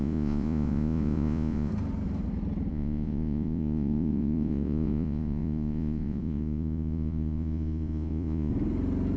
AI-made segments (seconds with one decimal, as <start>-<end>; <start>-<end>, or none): 0.0-1.7; 2.7-8.5

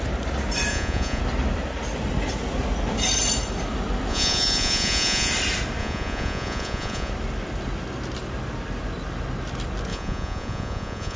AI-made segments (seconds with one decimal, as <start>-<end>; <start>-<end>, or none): 0.7-1.2; 4.1-5.3; 5.8-7.1; 9.9-11.2